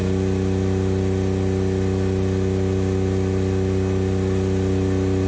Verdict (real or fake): real